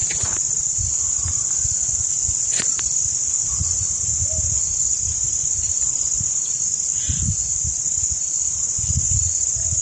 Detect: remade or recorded recorded